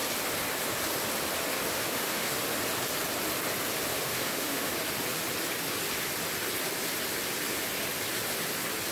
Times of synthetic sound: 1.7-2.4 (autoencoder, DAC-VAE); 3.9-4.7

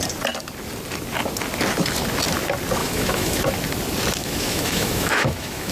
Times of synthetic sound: 2.8-3.4 (autoencoder, DAC-VAE); 4.2-5.7

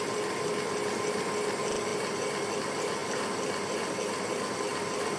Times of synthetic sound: none

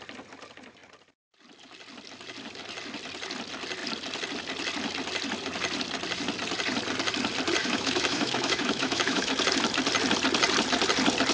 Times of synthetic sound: 7.6-9.3 (autoencoder, DAC-VAE)

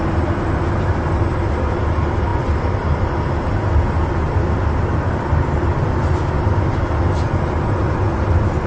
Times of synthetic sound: none

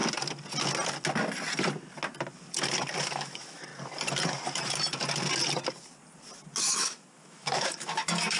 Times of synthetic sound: 3.0-3.7 (autoencoder, DAC-VAE); 6.6-8.4

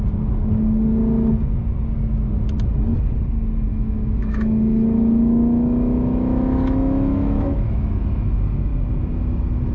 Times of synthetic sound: 3.7-7.9 (autoencoder, DAC-VAE)

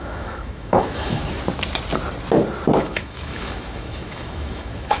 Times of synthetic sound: 0.0-1.2 (autoencoder, DAC-VAE); 2.8-5.0